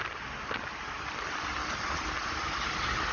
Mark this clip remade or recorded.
recorded